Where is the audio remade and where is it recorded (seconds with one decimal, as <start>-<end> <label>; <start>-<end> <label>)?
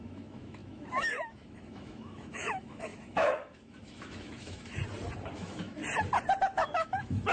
0.0-4.8 remade; 4.8-5.3 recorded; 5.3-5.8 remade; 5.8-6.4 recorded; 6.4-7.3 remade